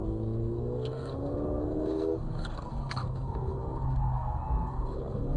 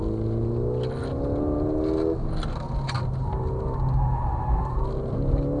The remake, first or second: first